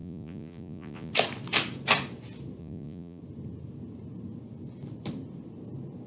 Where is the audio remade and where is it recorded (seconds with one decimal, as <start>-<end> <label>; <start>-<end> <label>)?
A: 0.0-1.1 remade; 1.1-2.6 recorded; 2.6-3.2 remade; 3.2-6.1 recorded